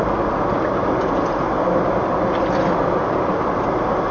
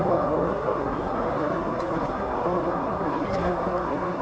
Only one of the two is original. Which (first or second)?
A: first